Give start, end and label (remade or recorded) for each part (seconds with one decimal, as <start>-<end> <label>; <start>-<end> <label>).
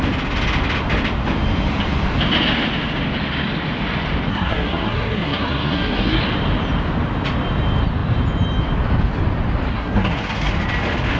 0.0-4.3 recorded; 4.3-6.2 remade; 6.2-9.7 recorded; 9.7-10.5 remade; 10.5-11.2 recorded